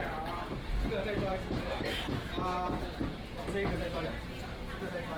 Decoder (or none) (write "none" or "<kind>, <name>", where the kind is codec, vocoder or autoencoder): none